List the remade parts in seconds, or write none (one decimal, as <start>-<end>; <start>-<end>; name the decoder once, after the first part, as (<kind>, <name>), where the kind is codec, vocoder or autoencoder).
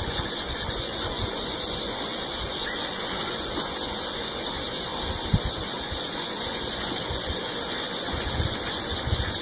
0.0-4.9 (vocoder, Vocos); 5.4-9.4